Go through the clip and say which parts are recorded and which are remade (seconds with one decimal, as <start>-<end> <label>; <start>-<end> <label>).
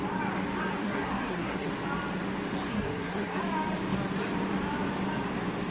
0.0-0.8 recorded; 0.8-1.7 remade; 1.7-2.7 recorded; 2.7-3.4 remade; 3.4-5.7 recorded